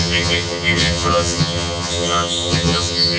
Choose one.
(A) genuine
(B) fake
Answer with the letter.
B